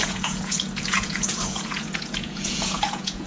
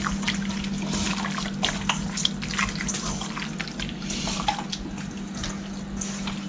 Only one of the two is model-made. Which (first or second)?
first